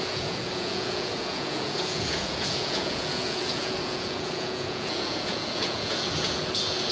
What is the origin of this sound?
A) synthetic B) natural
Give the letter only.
A